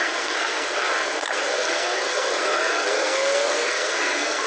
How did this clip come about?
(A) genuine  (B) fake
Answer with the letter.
B